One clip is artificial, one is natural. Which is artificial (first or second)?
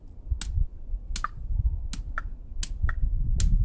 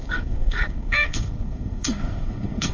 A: second